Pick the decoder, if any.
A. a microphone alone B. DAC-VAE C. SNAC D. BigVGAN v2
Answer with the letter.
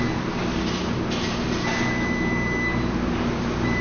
A